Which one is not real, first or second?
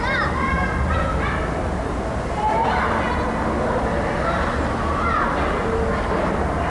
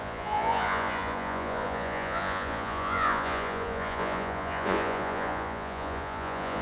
second